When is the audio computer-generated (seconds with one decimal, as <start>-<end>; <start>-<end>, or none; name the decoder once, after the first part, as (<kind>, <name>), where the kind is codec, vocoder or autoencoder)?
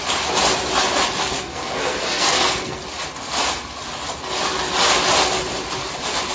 1.2-2.8 (codec, SNAC)